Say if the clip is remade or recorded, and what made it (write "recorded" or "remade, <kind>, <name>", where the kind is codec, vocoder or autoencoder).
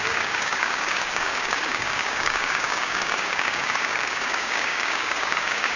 remade, codec, DAC